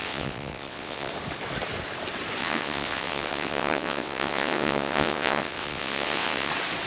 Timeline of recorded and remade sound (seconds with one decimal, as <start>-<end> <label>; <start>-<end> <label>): 0.0-1.1 remade; 1.1-2.4 recorded; 2.4-6.5 remade; 6.5-6.9 recorded